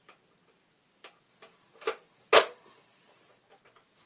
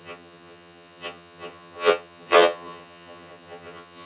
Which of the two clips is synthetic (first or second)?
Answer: second